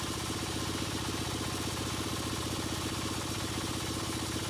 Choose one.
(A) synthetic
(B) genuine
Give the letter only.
B